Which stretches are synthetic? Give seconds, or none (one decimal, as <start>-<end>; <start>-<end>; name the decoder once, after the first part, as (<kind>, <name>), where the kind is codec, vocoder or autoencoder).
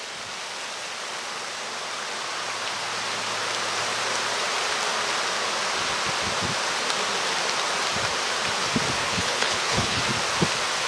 9.0-10.0 (codec, HILCodec)